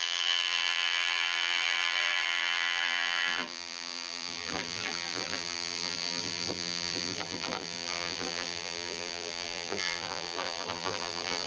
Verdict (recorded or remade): remade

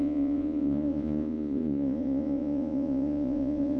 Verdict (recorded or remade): remade